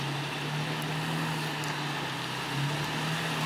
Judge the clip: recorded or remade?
recorded